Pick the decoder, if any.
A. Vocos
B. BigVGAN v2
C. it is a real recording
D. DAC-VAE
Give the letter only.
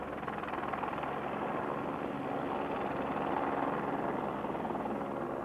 C